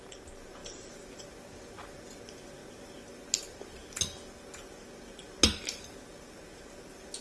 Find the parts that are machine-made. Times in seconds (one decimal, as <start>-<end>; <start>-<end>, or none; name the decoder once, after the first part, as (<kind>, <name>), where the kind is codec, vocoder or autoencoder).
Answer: none